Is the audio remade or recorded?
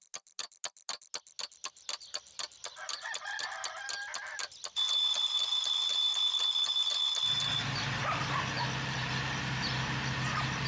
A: recorded